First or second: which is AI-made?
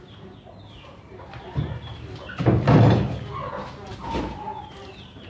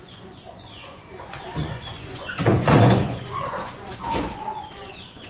second